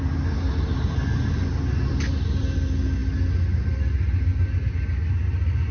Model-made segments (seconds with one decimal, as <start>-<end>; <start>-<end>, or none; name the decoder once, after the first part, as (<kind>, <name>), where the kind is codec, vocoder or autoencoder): none